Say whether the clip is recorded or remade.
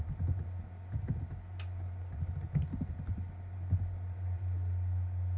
recorded